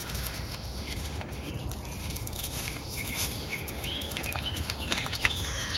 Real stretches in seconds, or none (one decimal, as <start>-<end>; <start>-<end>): 1.5-2.0